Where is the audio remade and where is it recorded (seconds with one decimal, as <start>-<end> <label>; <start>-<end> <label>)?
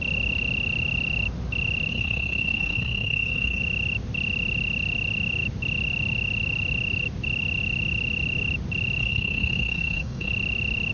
0.0-1.9 recorded; 1.9-3.6 remade; 3.6-9.0 recorded; 9.0-10.3 remade; 10.3-10.9 recorded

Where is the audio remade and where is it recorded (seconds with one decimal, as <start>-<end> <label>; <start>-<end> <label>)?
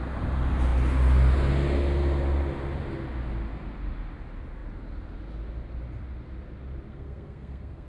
0.0-6.9 recorded; 6.9-7.9 remade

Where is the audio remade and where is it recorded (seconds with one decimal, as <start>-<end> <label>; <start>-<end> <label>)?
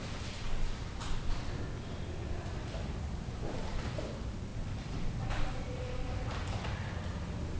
0.0-7.6 recorded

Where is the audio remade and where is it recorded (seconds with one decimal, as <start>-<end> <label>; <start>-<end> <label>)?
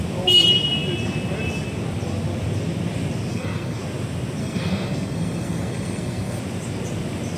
0.0-3.3 recorded; 3.3-3.8 remade; 3.8-4.4 recorded; 4.4-6.4 remade; 6.4-7.4 recorded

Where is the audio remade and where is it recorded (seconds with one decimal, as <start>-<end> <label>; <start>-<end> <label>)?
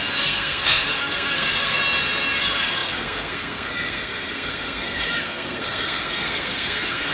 0.0-1.8 remade; 1.8-2.4 recorded; 2.4-7.1 remade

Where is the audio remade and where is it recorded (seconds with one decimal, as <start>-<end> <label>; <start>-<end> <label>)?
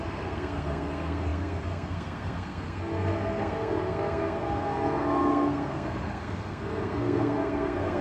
0.0-8.0 remade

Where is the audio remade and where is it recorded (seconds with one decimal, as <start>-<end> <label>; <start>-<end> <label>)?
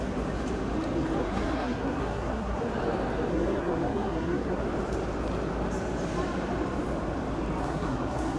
0.0-1.2 recorded; 1.2-2.6 remade; 2.6-3.3 recorded; 3.3-4.6 remade; 4.6-7.6 recorded; 7.6-8.4 remade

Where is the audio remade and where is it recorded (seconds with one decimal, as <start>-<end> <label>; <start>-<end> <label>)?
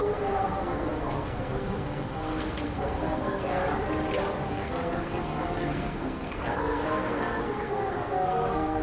0.0-3.6 remade; 3.6-4.5 recorded; 4.5-8.8 remade